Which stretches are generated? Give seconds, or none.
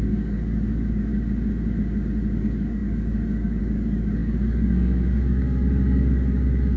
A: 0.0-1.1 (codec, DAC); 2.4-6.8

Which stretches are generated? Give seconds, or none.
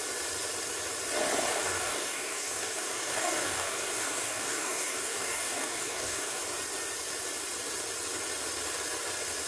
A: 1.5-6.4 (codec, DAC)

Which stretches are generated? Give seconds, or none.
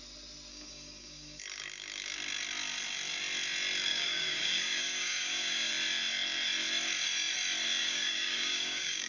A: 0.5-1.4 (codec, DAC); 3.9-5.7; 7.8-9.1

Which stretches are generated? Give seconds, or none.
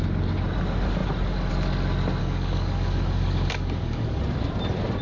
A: 2.2-4.2 (codec, DAC)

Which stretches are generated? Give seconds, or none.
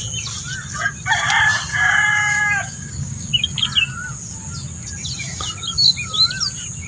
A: 1.7-3.3 (codec, DAC)